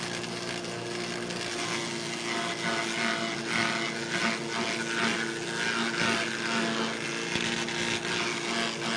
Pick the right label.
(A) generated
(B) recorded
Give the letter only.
B